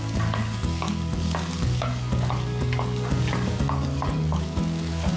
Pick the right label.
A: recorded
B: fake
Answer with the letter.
B